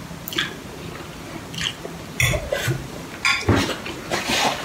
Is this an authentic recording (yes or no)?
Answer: yes